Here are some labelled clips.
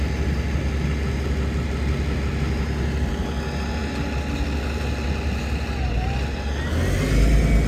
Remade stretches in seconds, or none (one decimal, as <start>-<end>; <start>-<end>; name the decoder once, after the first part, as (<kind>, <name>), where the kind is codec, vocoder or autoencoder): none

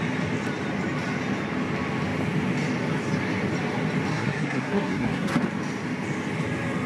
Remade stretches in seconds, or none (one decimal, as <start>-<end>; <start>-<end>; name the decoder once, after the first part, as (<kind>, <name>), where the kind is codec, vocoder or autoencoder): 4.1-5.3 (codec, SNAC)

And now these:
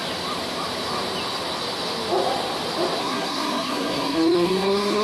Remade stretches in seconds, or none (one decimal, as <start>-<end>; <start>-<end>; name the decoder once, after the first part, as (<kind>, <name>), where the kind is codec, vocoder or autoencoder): 3.0-5.0 (codec, SNAC)

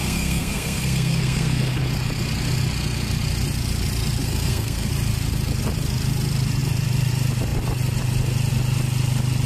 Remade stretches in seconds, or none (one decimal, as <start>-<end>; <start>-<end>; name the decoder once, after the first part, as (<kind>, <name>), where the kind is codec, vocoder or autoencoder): 0.0-1.8 (codec, SNAC); 4.2-4.9